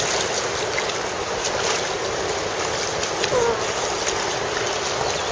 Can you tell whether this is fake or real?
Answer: real